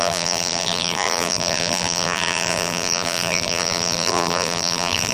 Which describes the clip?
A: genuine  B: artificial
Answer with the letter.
B